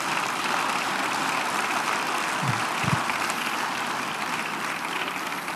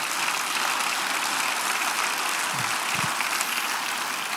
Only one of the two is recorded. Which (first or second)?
second